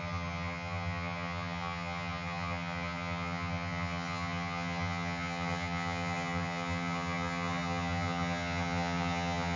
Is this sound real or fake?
fake